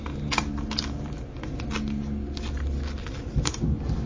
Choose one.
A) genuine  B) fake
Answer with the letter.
A